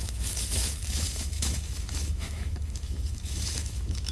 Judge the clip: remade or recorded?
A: remade